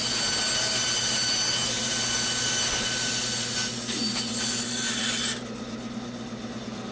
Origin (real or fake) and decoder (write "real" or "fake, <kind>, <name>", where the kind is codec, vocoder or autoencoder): real